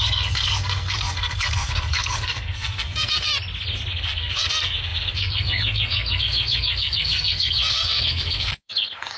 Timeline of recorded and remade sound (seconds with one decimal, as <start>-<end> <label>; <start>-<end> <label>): 0.0-3.3 remade; 3.3-3.9 recorded; 3.9-9.2 remade